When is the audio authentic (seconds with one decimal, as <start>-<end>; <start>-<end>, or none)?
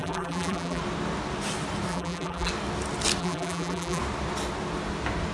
0.8-1.9; 2.5-3.2; 4.0-5.3